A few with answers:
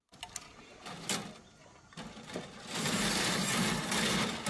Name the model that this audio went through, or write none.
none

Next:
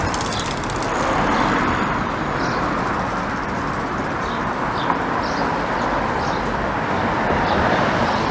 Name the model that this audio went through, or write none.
vocoder, BigVGAN v2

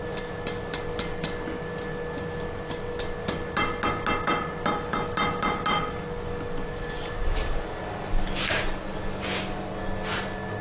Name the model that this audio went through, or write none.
none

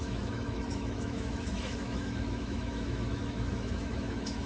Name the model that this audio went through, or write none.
autoencoder, DAC-VAE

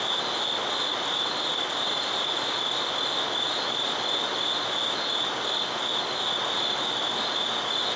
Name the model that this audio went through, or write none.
none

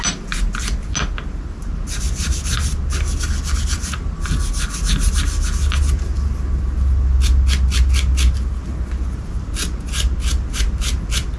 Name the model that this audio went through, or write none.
none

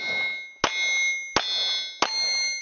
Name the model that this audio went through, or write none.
none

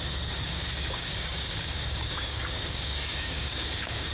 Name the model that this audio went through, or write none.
codec, DAC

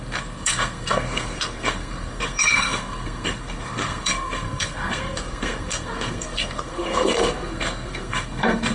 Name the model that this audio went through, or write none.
codec, SNAC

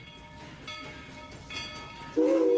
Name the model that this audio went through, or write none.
none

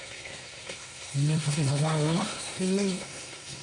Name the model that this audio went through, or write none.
codec, SNAC